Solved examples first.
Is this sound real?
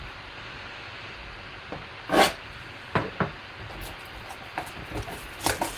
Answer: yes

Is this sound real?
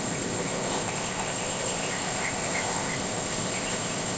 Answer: no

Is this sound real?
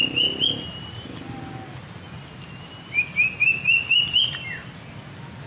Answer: yes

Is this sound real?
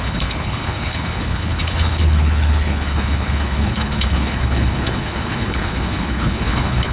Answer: no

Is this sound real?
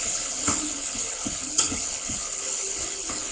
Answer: no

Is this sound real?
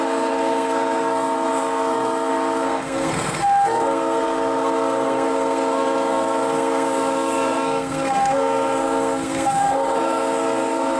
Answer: no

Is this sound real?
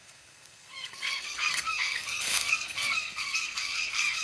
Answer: no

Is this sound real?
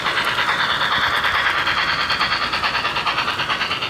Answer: yes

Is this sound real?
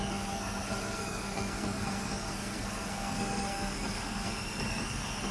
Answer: no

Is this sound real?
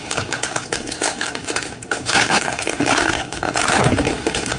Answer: no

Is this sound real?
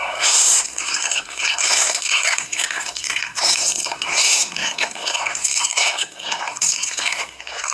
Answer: no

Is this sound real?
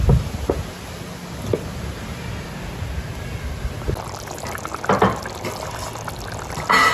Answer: yes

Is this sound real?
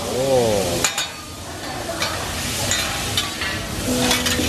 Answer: yes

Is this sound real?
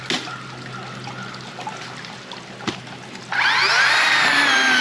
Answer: yes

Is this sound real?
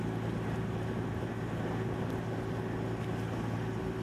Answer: yes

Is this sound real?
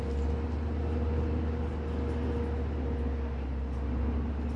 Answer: yes